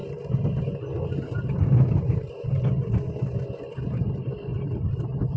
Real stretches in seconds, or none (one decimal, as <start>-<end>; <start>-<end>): 0.0-4.5